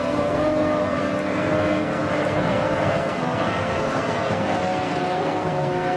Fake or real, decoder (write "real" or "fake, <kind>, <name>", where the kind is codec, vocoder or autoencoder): fake, codec, SNAC